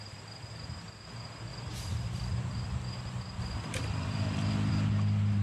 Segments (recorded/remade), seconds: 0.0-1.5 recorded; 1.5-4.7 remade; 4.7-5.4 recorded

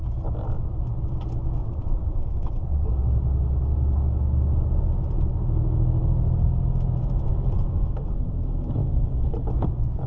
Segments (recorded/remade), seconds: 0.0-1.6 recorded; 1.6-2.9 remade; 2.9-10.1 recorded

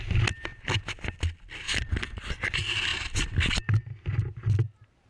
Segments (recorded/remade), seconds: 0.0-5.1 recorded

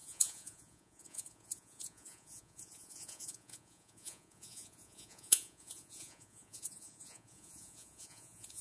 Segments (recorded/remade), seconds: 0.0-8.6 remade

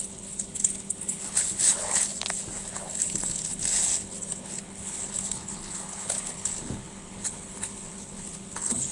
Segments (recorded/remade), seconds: 0.0-2.1 remade; 2.1-2.7 recorded; 2.7-8.9 remade

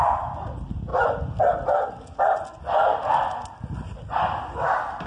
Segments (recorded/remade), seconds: 0.0-5.1 recorded